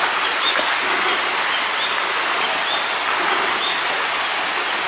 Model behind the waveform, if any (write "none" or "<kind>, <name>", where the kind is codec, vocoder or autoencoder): none